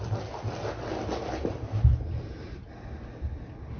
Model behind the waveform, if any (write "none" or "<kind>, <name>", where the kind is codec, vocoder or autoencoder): none